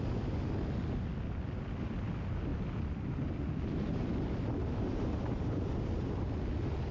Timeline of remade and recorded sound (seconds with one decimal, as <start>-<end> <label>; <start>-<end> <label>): 0.0-4.6 recorded; 4.6-5.7 remade; 5.7-6.9 recorded